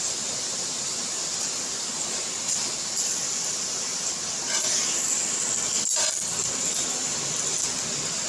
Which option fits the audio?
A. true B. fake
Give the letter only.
A